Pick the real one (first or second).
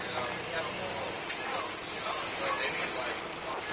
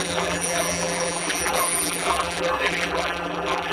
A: first